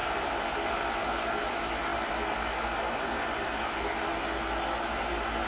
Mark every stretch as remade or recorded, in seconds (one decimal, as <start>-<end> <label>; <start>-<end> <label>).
0.0-0.7 remade; 0.7-5.5 recorded